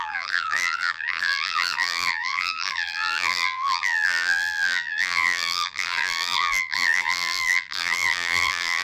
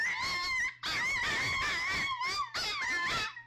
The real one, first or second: second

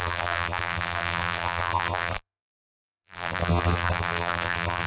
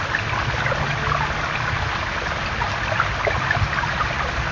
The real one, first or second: second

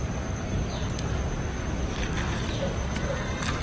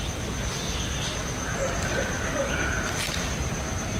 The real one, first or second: second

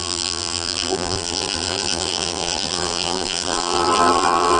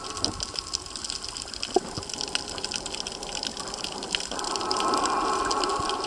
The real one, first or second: second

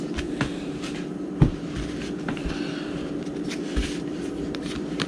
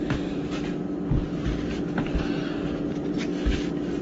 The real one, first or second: second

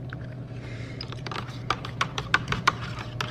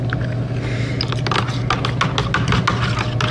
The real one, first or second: second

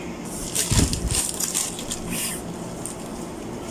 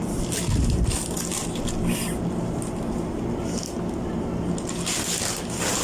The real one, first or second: second